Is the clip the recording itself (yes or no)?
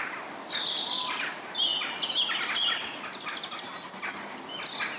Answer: yes